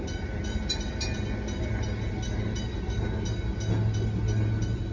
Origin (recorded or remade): recorded